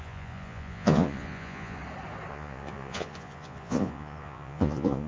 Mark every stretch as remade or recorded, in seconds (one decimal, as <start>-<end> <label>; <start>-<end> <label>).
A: 0.0-1.8 remade; 1.8-2.3 recorded; 2.3-5.1 remade